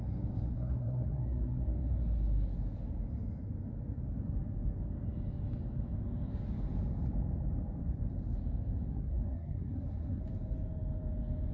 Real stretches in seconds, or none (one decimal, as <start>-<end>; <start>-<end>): 0.0-0.5; 1.7-8.9; 10.2-11.5